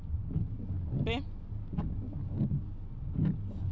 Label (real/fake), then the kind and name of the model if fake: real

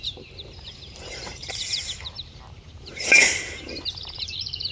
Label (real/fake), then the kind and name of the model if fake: fake, vocoder, BigVGAN v2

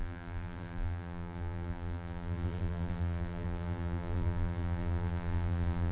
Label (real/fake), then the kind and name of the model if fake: fake, vocoder, BigVGAN v2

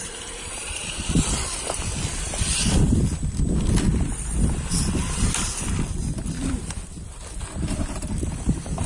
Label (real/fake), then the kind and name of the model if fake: fake, vocoder, BigVGAN v2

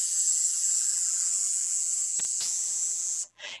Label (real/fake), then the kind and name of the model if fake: fake, vocoder, BigVGAN v2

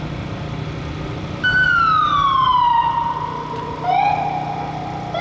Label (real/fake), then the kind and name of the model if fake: real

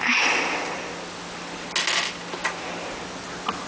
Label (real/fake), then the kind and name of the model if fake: real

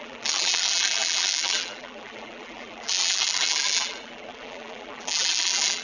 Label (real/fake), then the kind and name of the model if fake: fake, vocoder, BigVGAN v2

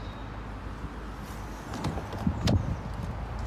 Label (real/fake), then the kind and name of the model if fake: real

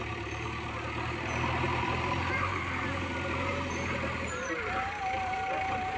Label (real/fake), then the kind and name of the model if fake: fake, vocoder, BigVGAN v2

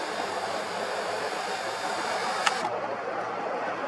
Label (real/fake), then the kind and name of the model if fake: real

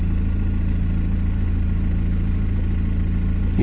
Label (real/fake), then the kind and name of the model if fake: real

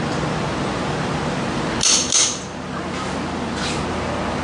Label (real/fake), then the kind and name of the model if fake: real